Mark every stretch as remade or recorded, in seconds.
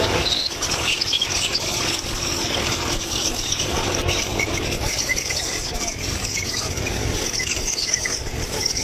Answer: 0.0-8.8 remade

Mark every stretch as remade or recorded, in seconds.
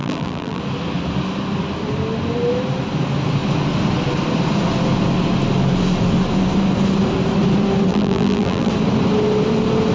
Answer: 0.0-0.6 remade; 0.6-7.9 recorded; 7.9-8.7 remade; 8.7-9.9 recorded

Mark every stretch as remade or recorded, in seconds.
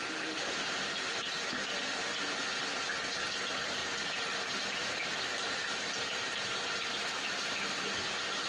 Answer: 0.0-8.5 recorded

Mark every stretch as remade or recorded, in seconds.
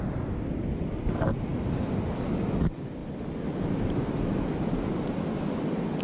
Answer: 0.0-6.0 recorded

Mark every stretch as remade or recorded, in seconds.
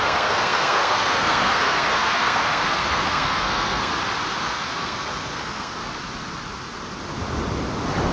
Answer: 0.0-3.9 remade; 3.9-4.4 recorded; 4.4-5.8 remade; 5.8-8.1 recorded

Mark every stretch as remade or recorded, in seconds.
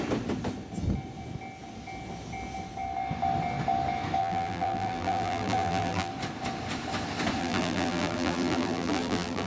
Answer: 0.0-4.2 recorded; 4.2-6.1 remade; 6.1-7.4 recorded; 7.4-9.5 remade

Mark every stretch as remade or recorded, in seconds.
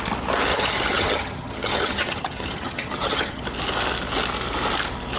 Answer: 0.0-0.5 recorded; 0.5-3.4 remade; 3.4-5.2 recorded